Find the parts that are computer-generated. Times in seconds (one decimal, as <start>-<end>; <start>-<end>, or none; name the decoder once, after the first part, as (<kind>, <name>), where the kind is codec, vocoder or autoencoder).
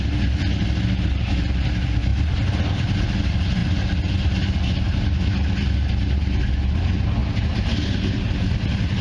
7.2-8.3 (vocoder, BigVGAN v2)